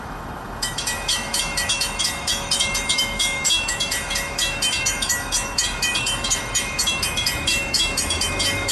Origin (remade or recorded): remade